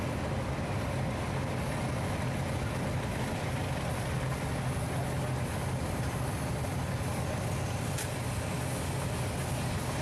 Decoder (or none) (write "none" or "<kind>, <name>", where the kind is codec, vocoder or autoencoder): none